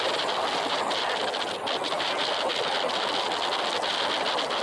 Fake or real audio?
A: real